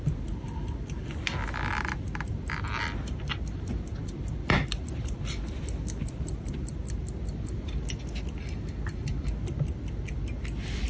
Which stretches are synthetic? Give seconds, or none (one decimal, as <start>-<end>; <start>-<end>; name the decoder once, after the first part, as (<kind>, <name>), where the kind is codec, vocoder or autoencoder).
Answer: none